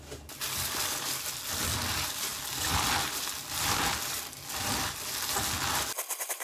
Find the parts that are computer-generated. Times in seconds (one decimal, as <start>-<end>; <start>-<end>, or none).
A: none